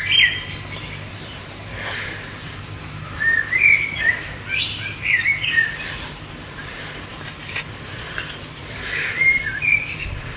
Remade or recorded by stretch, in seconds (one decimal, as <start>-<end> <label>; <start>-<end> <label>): 0.0-10.4 remade